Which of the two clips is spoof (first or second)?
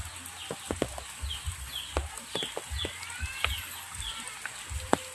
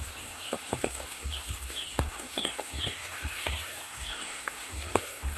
second